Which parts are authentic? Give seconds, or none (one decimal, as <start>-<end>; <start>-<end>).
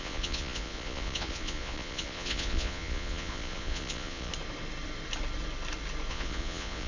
4.3-6.1